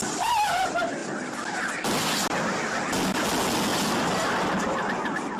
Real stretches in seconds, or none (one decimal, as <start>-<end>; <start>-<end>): 0.0-1.0; 1.7-5.4

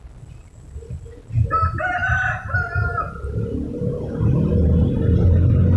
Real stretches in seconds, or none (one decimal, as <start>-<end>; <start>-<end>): 0.0-5.8

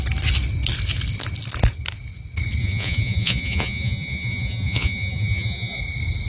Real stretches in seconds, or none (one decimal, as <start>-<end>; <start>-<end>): 0.0-2.6; 5.8-6.3

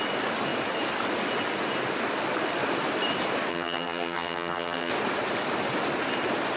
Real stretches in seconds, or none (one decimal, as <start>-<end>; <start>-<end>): 0.0-3.5; 4.9-6.6

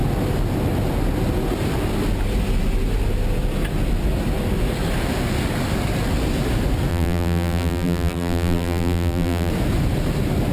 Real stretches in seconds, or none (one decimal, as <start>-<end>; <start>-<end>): 0.0-6.9; 9.5-10.5

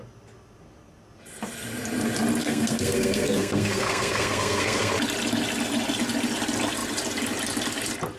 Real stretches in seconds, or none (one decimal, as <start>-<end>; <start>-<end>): 0.0-2.4; 4.9-8.2